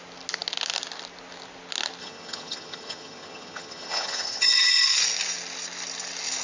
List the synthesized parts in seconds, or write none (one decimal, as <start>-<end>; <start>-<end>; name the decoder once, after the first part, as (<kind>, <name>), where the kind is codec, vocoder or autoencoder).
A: 2.0-4.7 (vocoder, HiFi-GAN)

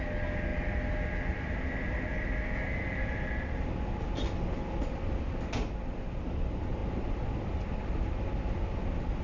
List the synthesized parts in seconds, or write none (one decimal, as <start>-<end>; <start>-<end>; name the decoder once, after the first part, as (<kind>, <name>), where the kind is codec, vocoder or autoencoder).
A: none

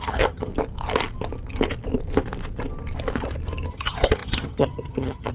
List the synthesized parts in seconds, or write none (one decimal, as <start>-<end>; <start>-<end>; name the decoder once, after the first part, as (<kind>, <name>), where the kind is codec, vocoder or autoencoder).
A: 0.0-0.5 (vocoder, HiFi-GAN); 3.7-5.3

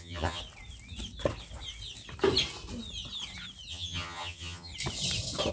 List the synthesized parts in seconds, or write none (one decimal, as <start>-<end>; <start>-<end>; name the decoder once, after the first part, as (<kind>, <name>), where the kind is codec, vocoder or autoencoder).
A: 0.0-0.4 (vocoder, HiFi-GAN); 3.7-4.7

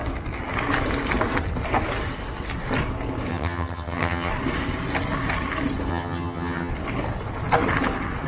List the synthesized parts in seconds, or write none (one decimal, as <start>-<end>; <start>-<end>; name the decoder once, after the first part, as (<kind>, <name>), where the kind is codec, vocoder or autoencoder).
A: 3.3-4.3 (vocoder, HiFi-GAN); 5.9-6.7